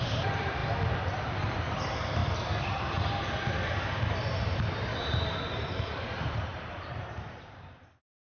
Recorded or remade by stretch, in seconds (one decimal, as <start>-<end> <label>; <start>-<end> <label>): 0.0-0.6 remade; 0.6-1.3 recorded; 1.3-2.2 remade; 2.2-5.9 recorded; 5.9-8.3 remade